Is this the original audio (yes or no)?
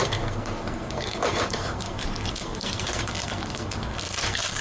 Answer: no